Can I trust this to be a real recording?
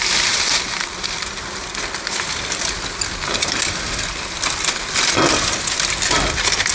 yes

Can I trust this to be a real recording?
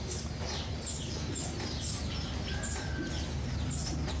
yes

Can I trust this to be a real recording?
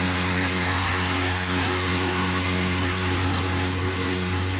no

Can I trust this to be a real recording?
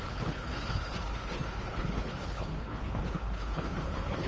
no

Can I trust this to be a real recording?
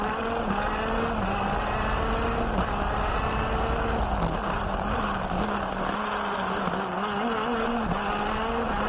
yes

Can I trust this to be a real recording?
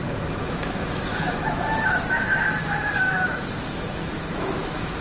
no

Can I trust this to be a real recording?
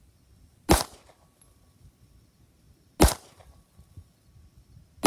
yes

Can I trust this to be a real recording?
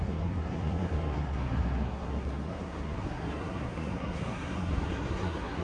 no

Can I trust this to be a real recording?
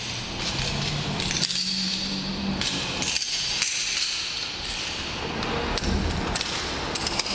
yes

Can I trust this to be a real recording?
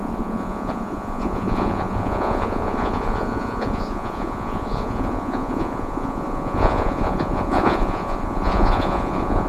no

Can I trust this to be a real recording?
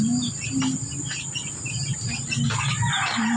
yes